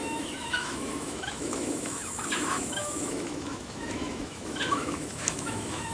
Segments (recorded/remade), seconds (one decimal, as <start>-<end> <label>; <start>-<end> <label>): 0.0-5.9 remade